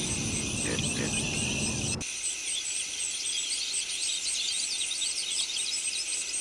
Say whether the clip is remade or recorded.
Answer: remade